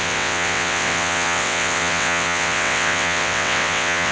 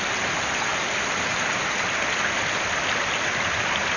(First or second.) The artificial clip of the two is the first